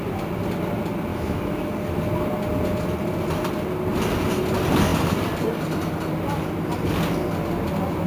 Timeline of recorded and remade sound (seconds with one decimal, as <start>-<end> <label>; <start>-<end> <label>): 0.0-1.1 recorded; 1.1-1.7 remade; 1.7-8.1 recorded